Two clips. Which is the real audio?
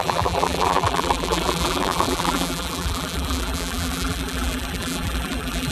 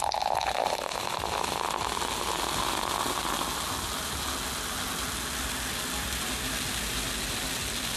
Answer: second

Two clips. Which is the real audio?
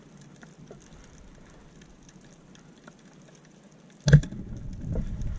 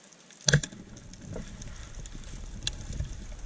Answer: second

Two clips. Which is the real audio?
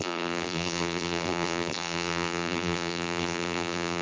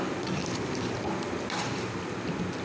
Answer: second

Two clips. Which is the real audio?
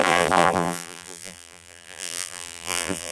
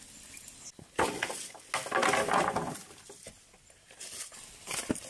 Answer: second